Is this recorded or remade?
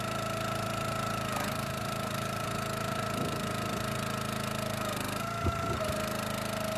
recorded